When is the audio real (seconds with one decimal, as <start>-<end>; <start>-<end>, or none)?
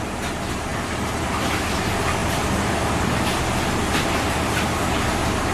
0.0-5.5